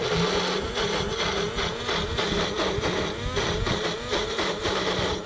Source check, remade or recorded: recorded